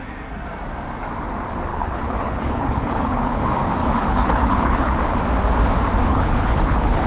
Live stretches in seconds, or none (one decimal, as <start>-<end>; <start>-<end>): 0.0-1.7; 3.4-3.8; 5.0-6.1

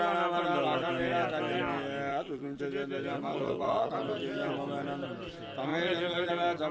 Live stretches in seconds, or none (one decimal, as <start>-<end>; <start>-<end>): 0.0-2.1; 2.6-3.3; 3.9-5.7; 6.3-6.7